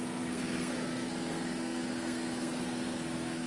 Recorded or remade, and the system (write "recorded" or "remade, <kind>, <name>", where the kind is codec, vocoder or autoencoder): remade, codec, SNAC